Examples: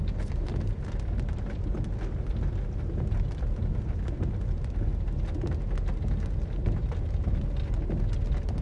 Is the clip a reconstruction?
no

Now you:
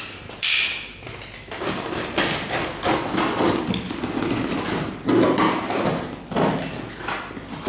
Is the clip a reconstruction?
no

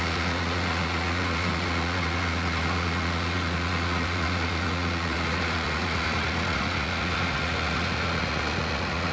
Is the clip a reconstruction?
yes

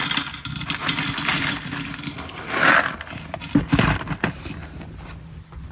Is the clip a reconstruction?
no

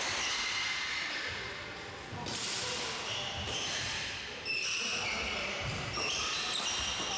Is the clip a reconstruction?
no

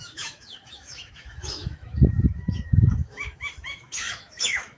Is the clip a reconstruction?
yes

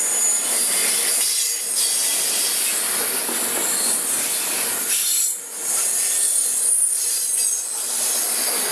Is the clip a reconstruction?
no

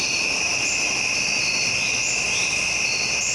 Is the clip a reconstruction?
no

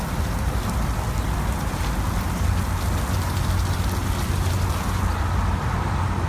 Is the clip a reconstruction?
no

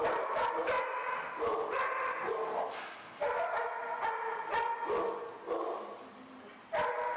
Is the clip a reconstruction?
no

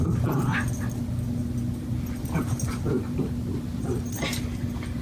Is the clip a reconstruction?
no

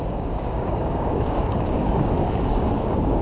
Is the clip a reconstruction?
yes